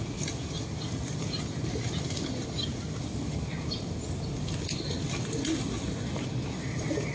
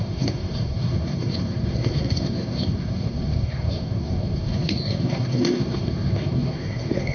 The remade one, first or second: second